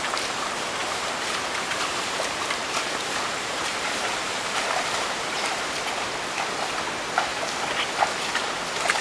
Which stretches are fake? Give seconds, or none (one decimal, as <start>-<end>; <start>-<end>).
0.8-5.9; 7.3-7.9